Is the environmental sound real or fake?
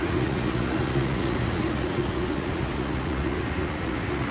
fake